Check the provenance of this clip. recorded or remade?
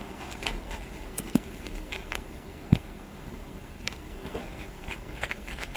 remade